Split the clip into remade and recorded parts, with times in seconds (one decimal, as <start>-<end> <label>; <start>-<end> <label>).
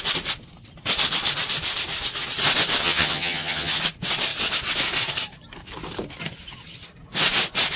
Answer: 0.0-2.8 recorded; 2.8-3.8 remade; 3.8-7.8 recorded